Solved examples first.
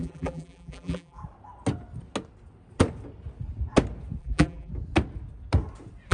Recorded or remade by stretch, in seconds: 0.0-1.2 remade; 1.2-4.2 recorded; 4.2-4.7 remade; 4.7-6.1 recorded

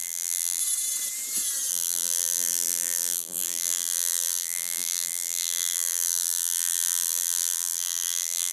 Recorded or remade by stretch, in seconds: 0.0-0.6 remade; 0.6-1.7 recorded; 1.7-8.5 remade

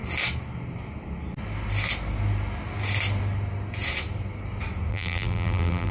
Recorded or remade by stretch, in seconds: 0.0-4.9 recorded; 4.9-5.9 remade

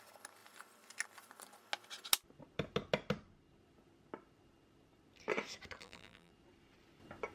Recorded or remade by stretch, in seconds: 0.0-5.8 recorded; 5.8-6.3 remade; 6.3-7.3 recorded

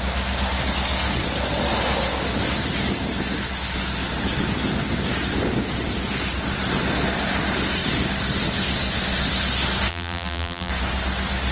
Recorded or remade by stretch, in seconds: 0.0-9.9 recorded; 9.9-10.7 remade; 10.7-11.5 recorded

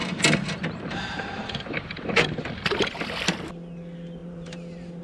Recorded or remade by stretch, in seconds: 0.0-2.2 remade; 2.2-4.2 recorded; 4.2-5.0 remade

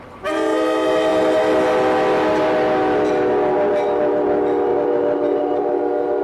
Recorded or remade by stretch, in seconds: 0.0-4.7 recorded; 4.7-5.8 remade; 5.8-6.2 recorded

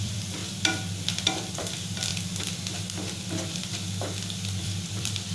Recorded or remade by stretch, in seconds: 0.0-0.4 remade; 0.4-1.5 recorded; 1.5-2.1 remade; 2.1-4.6 recorded; 4.6-5.3 remade